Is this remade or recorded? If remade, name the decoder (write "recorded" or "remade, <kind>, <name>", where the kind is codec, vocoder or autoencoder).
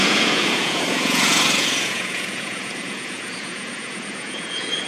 remade, vocoder, Vocos